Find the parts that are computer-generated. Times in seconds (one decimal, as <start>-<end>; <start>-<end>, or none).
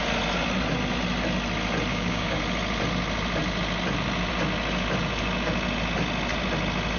1.9-2.4